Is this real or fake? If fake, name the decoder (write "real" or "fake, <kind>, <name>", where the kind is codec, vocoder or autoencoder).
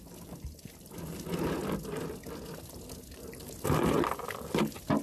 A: real